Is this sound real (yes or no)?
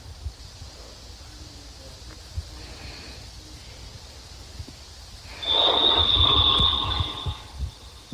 yes